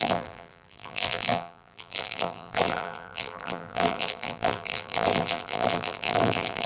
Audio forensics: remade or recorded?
remade